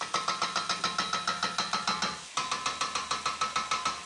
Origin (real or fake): real